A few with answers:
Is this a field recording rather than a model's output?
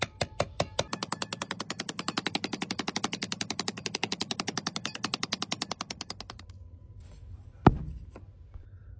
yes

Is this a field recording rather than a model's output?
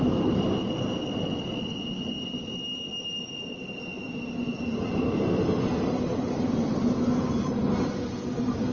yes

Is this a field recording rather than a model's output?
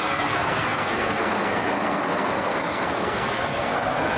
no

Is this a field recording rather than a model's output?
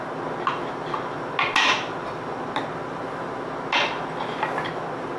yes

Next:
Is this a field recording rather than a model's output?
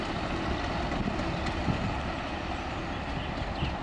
yes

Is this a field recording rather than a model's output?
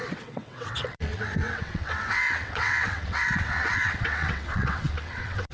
no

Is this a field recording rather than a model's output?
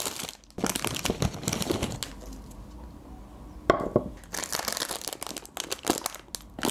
yes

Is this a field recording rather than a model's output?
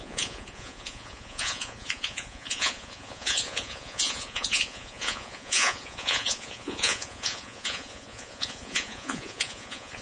no